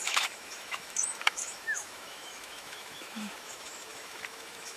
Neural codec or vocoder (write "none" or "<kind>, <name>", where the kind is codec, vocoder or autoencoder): autoencoder, DAC-VAE